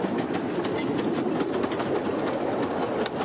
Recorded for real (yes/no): yes